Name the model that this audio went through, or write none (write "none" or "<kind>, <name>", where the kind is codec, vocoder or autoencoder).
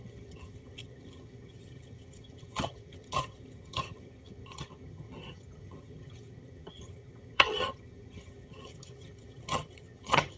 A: vocoder, HiFi-GAN